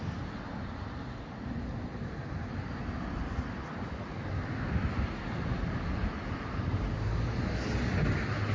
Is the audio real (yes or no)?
yes